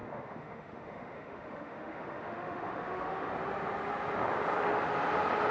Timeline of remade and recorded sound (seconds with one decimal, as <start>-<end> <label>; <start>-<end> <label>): 0.0-3.3 remade; 3.3-5.5 recorded